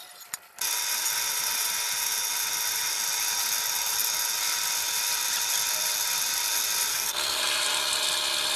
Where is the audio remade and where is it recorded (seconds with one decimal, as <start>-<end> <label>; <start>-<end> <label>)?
0.0-6.9 recorded; 6.9-7.4 remade; 7.4-8.6 recorded